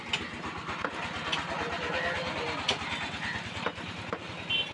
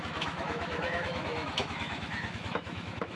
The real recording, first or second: first